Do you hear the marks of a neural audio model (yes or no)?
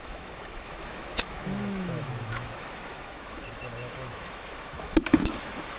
yes